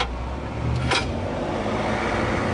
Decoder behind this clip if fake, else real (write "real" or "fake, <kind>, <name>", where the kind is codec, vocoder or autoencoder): real